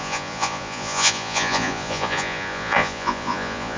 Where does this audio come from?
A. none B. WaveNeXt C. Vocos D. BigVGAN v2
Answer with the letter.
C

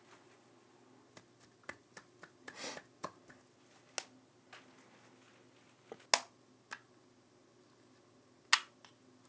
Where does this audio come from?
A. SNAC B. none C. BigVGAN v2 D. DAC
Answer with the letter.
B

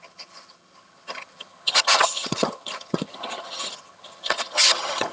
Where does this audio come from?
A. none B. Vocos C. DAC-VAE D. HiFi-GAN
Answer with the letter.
D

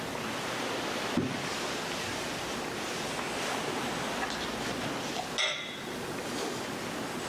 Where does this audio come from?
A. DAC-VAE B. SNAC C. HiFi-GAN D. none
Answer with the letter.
D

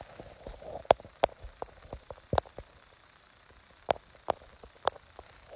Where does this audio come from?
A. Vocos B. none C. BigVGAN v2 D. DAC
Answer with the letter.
B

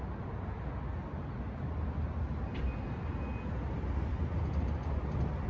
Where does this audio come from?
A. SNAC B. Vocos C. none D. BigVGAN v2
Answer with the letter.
C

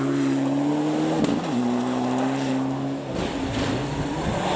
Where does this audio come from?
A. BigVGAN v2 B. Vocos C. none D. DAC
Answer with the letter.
C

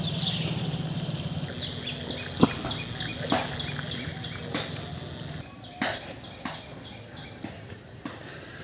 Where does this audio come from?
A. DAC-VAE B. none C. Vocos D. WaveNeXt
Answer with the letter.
B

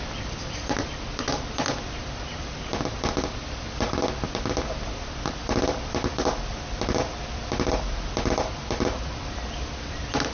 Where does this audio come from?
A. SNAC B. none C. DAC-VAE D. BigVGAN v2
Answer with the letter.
D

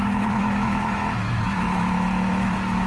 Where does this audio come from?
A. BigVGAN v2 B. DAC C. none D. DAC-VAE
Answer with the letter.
D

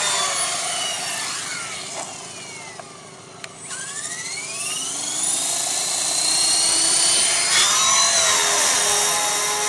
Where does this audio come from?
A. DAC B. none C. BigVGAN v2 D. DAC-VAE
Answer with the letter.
B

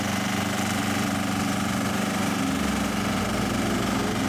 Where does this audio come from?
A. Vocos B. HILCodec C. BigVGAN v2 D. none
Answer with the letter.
D